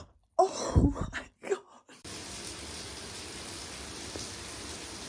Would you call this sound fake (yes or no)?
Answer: no